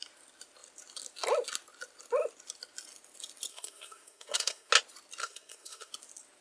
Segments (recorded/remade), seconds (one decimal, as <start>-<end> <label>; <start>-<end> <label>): 0.0-3.5 recorded; 3.5-4.7 remade; 4.7-5.2 recorded; 5.2-5.9 remade; 5.9-6.4 recorded